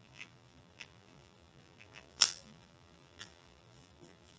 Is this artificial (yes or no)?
yes